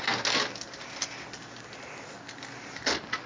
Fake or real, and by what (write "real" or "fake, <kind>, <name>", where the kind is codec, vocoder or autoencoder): real